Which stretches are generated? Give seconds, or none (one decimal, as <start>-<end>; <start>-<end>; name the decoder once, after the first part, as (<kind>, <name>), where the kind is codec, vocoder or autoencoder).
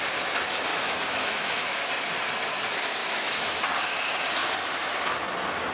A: 0.7-1.9 (autoencoder, DAC-VAE); 3.0-3.6